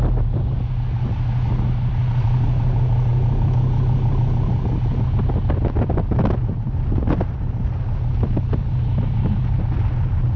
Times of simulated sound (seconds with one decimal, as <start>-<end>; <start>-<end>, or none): none